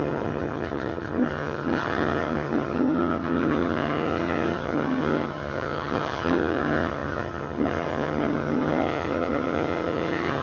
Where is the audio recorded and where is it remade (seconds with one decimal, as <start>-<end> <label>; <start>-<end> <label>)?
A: 0.0-10.4 remade